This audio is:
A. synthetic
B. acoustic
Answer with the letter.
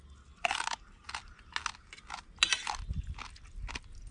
B